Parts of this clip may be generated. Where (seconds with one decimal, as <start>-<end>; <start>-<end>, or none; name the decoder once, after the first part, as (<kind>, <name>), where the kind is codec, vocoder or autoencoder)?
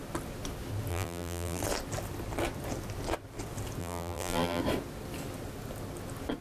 0.9-1.6 (vocoder, BigVGAN v2); 3.8-4.6